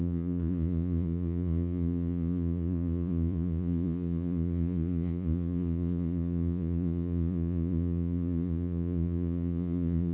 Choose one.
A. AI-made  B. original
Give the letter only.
A